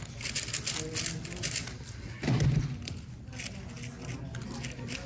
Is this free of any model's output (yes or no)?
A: yes